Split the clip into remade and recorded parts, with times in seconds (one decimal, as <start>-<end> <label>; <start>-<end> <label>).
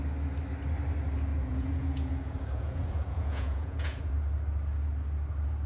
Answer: 0.0-1.3 recorded; 1.3-4.1 remade; 4.1-5.7 recorded